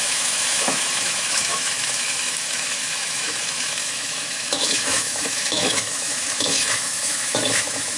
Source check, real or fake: fake